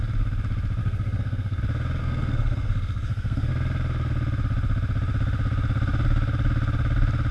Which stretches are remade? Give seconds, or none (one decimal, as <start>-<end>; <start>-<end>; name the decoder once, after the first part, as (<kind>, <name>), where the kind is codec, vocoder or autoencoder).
0.8-1.6 (codec, SNAC); 2.0-3.5